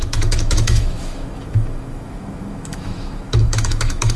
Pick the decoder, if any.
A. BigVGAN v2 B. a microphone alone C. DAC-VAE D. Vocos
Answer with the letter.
C